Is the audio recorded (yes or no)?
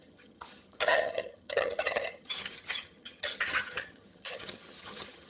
no